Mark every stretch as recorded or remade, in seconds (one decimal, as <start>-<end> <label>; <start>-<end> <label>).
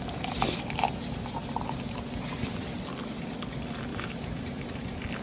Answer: 0.0-3.9 recorded; 3.9-4.7 remade; 4.7-5.2 recorded